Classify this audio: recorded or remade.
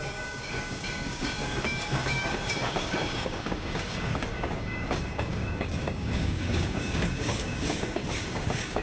remade